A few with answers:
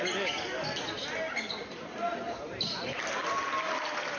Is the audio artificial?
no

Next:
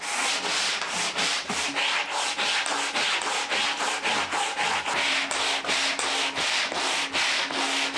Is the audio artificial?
no